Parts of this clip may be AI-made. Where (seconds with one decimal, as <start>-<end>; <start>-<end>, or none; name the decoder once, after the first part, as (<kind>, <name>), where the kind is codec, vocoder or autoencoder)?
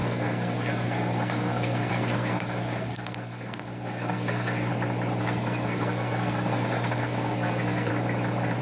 0.0-4.7 (codec, SNAC); 5.2-7.9